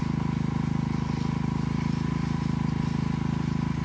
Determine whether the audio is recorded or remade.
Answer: recorded